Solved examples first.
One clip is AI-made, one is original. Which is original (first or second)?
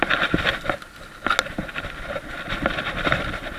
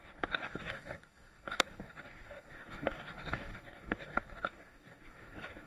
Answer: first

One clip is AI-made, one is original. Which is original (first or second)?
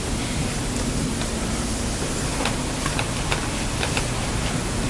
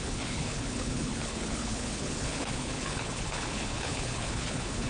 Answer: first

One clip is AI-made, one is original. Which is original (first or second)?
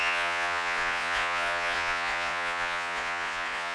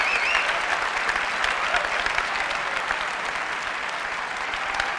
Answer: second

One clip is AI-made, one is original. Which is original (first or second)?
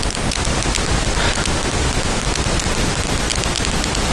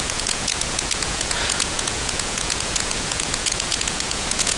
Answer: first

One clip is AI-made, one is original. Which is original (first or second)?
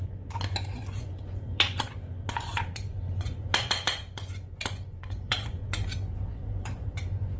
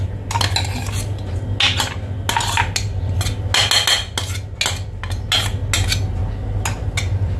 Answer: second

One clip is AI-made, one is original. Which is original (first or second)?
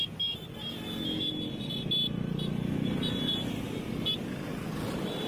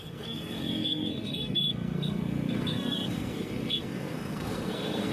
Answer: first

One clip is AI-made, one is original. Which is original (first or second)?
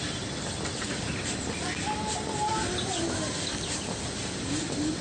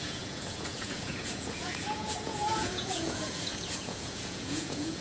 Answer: first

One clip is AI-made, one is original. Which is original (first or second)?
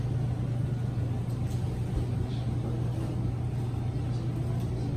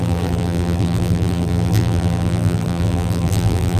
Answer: first